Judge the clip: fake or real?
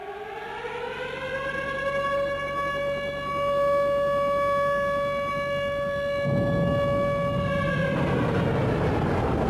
real